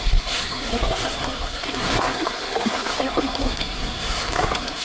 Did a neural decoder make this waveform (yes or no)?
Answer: yes